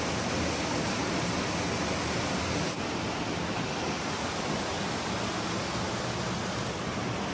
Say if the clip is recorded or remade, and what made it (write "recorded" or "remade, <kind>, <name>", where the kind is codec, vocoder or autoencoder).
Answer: recorded